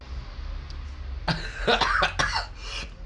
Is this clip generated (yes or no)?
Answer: no